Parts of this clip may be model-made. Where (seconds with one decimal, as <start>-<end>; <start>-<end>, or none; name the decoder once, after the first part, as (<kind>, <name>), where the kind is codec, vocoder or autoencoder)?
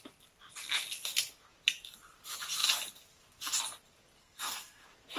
4.2-4.8 (codec, SNAC)